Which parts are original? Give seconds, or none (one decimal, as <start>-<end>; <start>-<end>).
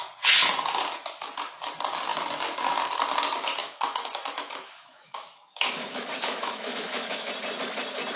0.0-3.6; 7.3-8.2